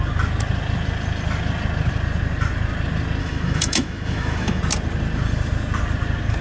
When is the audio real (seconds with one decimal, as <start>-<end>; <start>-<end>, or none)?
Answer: 0.0-3.2; 4.6-6.4

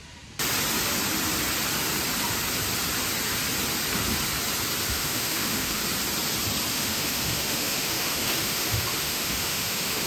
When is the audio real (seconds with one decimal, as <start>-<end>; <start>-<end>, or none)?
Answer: 0.0-4.9; 5.8-6.7

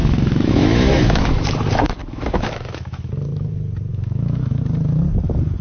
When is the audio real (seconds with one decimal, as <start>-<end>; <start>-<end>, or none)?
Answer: 1.3-2.0; 3.1-3.9; 4.6-5.6

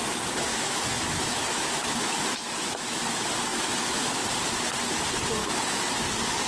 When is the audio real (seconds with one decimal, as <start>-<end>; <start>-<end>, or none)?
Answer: 0.0-0.5; 3.0-3.5; 4.3-5.4; 6.0-6.5

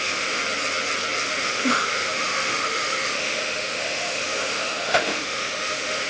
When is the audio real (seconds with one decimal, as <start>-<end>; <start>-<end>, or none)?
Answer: 0.4-1.3

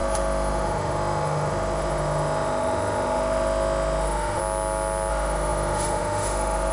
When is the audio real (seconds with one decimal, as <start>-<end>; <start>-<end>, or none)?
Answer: 4.4-5.1

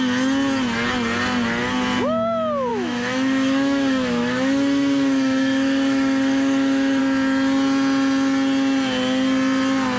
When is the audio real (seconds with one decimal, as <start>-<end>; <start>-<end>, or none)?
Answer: 0.0-2.7; 7.0-10.0

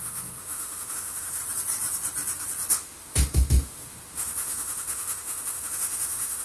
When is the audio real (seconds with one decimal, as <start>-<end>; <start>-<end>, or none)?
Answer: 1.4-2.7